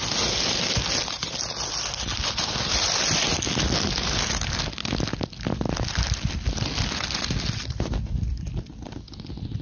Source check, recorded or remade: recorded